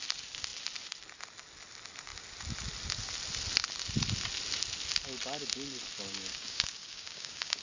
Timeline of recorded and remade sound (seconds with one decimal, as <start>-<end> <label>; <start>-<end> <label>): 0.0-6.3 recorded; 6.3-7.6 remade